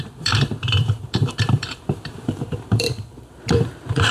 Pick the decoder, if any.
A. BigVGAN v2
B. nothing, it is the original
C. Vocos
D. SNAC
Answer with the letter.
A